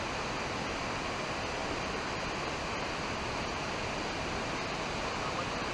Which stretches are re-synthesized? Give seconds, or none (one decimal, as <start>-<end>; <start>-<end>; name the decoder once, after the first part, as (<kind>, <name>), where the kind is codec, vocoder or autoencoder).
none